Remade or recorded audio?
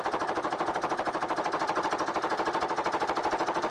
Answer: recorded